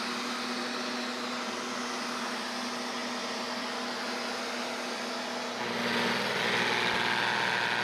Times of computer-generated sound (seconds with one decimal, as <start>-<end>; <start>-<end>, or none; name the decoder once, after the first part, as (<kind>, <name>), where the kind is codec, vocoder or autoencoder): none